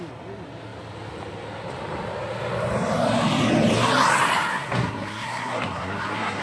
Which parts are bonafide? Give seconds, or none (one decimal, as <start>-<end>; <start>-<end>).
0.0-4.5